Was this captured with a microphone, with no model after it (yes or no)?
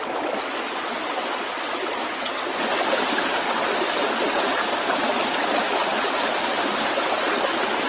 yes